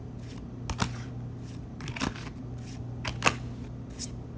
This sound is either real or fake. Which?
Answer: real